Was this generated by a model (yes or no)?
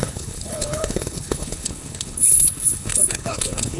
yes